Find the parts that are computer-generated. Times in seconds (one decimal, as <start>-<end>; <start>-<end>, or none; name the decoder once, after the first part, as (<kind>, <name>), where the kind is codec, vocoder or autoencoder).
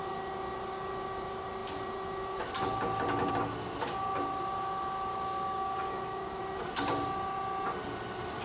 5.1-6.4 (codec, DAC)